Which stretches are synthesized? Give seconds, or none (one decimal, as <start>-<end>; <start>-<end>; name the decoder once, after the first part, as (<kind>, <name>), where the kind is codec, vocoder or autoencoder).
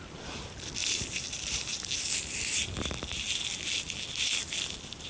none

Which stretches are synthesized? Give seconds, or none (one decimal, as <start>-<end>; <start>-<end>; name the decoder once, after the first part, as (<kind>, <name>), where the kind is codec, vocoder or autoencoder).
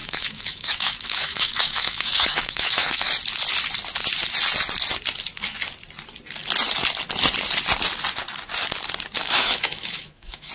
0.0-3.1 (autoencoder, DAC-VAE); 9.2-10.5